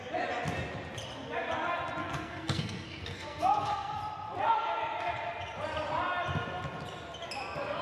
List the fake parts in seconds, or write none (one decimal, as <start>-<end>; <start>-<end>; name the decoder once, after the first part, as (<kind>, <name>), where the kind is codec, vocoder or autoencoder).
2.0-4.0 (codec, SNAC)